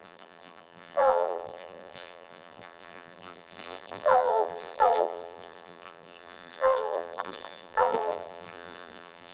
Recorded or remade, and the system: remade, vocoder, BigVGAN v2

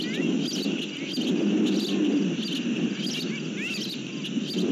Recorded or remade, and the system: recorded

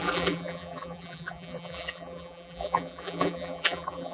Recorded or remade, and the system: remade, vocoder, BigVGAN v2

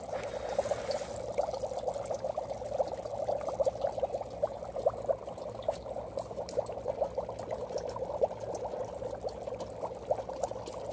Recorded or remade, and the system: recorded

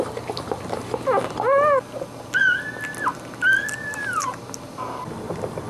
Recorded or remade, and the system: recorded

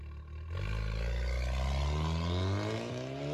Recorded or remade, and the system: recorded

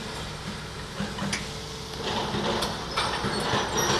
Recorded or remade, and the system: recorded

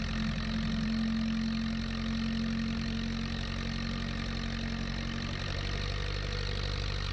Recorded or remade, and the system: recorded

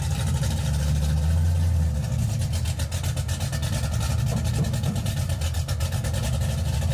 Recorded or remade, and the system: recorded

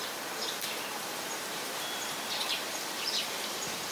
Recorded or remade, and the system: remade, vocoder, BigVGAN v2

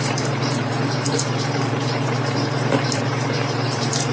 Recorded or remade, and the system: remade, vocoder, BigVGAN v2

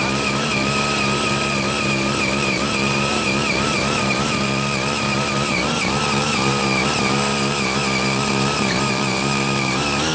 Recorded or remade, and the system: remade, vocoder, BigVGAN v2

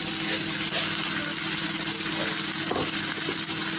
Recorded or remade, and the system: recorded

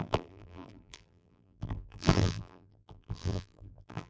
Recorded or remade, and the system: remade, vocoder, BigVGAN v2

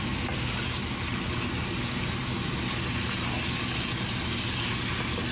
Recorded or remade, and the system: recorded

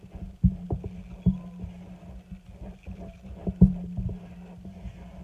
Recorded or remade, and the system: recorded